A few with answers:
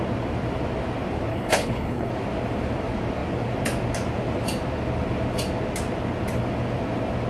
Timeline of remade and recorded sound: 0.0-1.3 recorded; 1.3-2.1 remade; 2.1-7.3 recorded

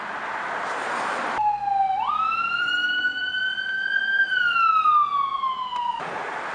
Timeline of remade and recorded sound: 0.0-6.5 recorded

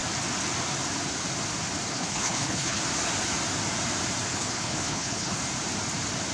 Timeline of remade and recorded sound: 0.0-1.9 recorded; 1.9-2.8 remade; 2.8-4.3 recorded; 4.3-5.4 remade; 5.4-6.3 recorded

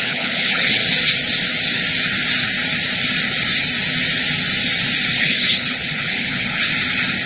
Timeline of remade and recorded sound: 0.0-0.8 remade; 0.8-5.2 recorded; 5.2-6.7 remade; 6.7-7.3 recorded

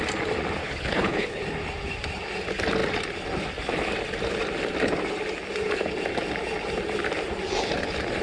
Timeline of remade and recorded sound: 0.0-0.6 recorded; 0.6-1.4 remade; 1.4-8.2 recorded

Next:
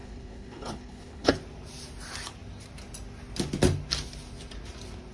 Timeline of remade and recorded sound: 0.0-1.3 remade; 1.3-5.1 recorded